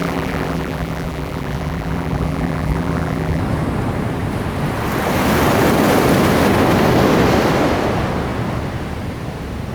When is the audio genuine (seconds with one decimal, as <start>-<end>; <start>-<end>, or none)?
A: 3.4-9.7